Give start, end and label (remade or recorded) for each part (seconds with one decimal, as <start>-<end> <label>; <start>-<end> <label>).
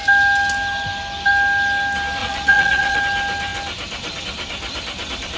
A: 0.0-2.2 recorded; 2.2-3.0 remade; 3.0-5.4 recorded